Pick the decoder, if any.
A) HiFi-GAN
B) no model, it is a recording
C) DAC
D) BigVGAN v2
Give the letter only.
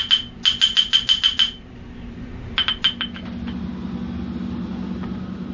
B